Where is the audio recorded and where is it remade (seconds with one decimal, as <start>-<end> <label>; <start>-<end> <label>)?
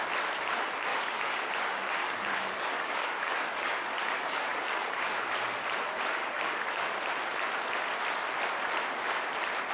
0.0-0.9 recorded; 0.9-1.5 remade; 1.5-2.0 recorded; 2.0-5.3 remade; 5.3-6.2 recorded; 6.2-7.0 remade; 7.0-9.7 recorded